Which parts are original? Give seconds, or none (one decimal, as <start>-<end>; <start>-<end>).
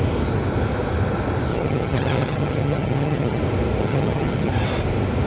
0.0-1.5; 3.4-3.8; 4.5-5.3